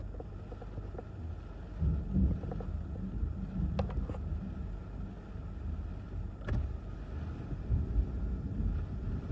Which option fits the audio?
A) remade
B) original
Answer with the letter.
B